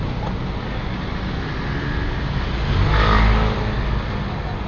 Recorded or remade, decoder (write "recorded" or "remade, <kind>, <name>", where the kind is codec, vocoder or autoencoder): recorded